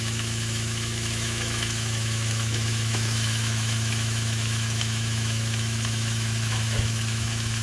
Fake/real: fake